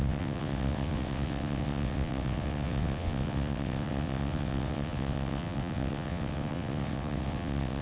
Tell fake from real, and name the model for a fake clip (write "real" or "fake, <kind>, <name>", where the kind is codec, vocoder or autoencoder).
fake, vocoder, WaveNeXt